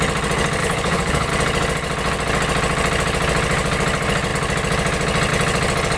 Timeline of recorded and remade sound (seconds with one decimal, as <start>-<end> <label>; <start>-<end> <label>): 0.0-0.6 recorded; 0.6-1.3 remade; 1.3-6.0 recorded